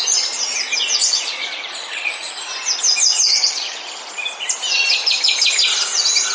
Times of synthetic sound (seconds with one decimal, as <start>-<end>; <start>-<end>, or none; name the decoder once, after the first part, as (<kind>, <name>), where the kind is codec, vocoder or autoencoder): 1.0-2.3 (vocoder, Vocos); 3.3-3.9